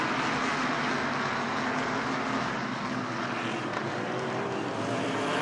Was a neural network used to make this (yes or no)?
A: no